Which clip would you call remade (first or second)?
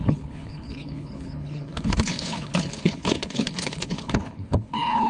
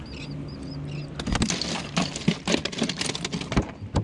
first